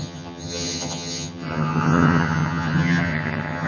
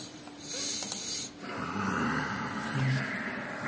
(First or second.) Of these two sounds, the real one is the second